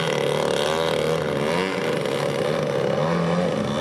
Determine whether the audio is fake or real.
real